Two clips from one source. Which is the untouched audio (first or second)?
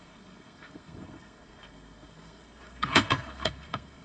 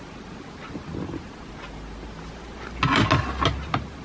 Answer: second